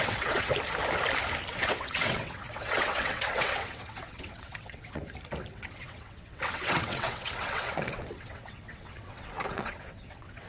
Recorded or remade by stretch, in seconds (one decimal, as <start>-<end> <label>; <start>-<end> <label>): 0.0-0.5 remade; 0.5-1.5 recorded; 1.5-5.0 remade; 5.0-5.5 recorded; 5.5-10.5 remade